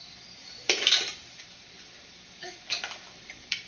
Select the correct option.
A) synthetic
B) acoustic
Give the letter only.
A